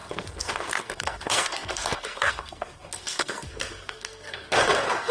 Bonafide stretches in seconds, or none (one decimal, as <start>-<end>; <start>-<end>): none